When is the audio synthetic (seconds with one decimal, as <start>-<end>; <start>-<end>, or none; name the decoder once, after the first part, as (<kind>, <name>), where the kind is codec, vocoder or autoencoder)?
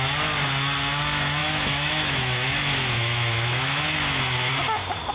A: 1.4-4.5 (autoencoder, DAC-VAE)